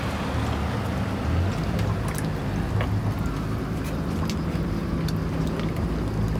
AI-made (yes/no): no